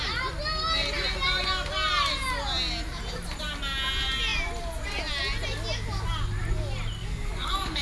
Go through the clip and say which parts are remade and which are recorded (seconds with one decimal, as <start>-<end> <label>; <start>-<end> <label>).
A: 0.0-7.0 recorded; 7.0-7.8 remade